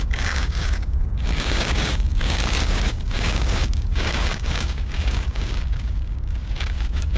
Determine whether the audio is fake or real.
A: fake